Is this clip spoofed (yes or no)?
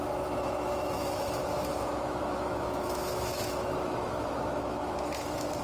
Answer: yes